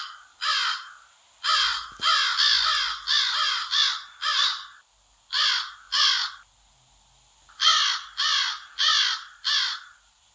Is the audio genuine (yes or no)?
yes